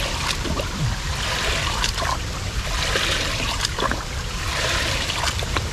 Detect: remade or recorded remade